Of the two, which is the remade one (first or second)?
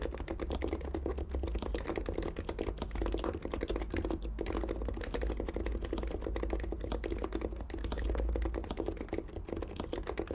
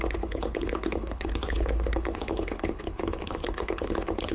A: second